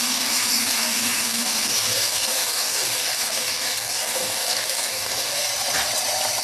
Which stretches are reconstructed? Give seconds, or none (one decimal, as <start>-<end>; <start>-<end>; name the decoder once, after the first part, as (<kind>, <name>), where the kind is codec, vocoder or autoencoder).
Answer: 0.0-5.5 (codec, DAC)